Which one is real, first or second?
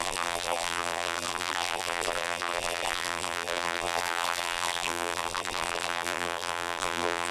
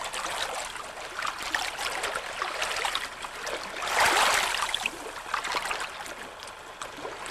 second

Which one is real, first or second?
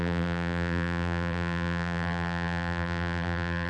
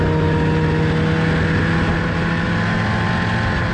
second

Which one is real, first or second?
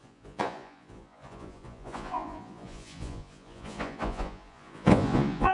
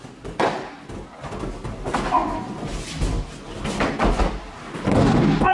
second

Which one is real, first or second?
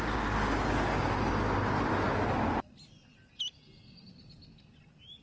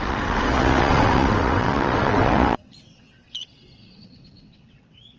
first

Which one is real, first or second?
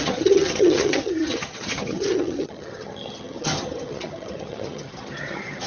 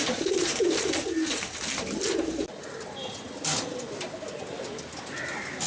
second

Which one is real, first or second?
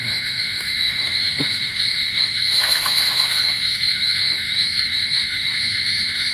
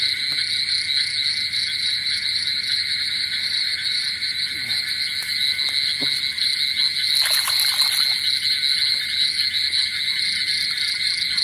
second